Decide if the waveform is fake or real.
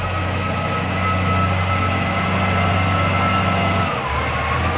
real